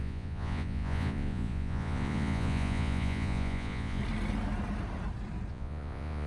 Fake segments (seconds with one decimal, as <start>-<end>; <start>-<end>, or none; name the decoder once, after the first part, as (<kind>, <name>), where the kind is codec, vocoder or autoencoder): 0.0-4.0 (vocoder, Vocos); 5.5-6.3